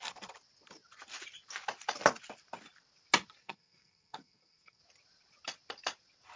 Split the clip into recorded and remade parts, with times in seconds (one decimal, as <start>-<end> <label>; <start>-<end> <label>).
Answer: 0.0-3.4 recorded; 3.4-4.8 remade; 4.8-6.4 recorded